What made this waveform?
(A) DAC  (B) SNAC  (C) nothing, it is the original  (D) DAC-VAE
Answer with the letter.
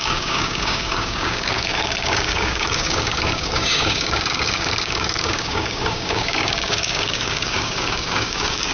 A